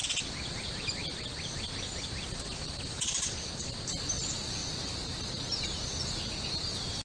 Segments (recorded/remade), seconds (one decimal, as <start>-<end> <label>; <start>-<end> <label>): 0.0-7.0 recorded